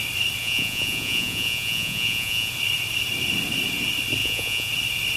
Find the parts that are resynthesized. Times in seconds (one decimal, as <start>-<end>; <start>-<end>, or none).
0.4-2.5; 4.2-4.7